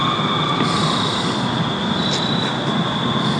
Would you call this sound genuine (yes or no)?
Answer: yes